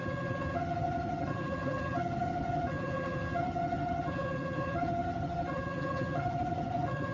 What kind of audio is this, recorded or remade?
remade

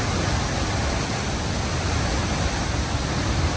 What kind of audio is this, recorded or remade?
recorded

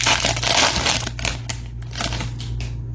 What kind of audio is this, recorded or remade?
recorded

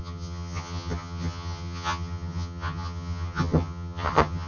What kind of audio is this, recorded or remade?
remade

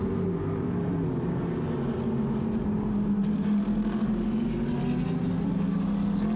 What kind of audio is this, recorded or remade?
recorded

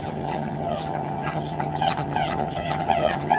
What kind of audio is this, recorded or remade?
remade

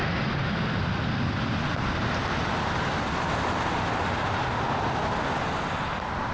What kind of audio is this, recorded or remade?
recorded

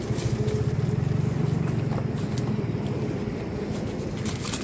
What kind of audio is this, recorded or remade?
recorded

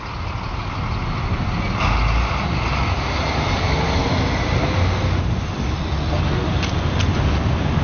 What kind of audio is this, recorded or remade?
recorded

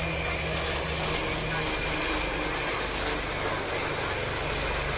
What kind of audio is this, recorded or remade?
recorded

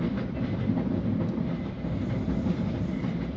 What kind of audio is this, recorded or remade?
recorded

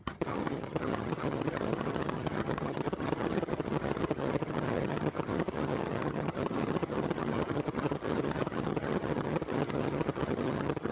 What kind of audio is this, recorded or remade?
remade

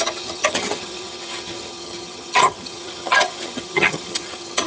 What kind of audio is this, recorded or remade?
remade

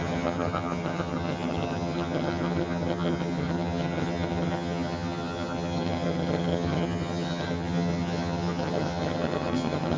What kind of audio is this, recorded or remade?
remade